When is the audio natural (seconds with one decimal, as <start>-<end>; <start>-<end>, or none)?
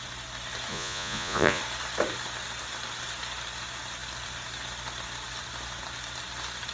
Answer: 0.0-0.7; 1.6-6.7